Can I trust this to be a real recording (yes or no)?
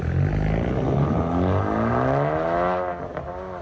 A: yes